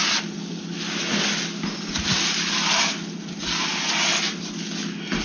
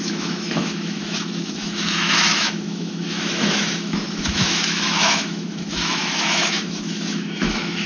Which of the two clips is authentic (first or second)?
first